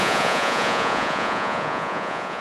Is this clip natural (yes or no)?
no